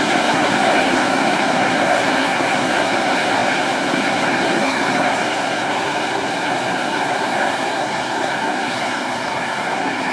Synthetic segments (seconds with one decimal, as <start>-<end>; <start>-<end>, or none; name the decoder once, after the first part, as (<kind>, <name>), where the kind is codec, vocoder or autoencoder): 0.0-10.1 (codec, SNAC)